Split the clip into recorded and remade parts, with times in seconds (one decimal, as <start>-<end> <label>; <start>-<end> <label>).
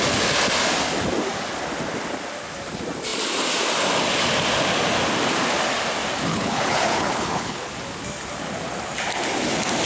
0.0-6.3 recorded; 6.3-7.7 remade; 7.7-9.9 recorded